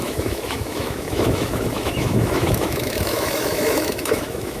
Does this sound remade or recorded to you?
remade